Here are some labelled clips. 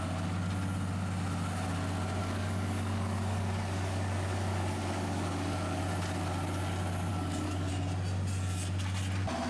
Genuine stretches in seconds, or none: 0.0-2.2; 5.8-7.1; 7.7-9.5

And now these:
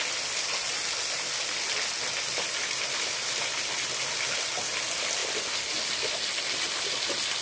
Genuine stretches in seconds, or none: 0.0-7.4

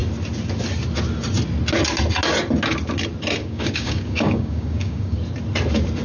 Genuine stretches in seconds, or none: 0.0-3.4; 5.2-6.0

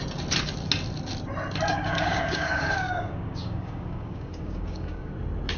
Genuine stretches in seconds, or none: 0.0-1.7; 5.1-5.6

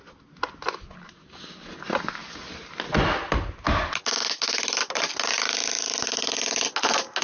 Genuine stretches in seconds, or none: 0.0-7.2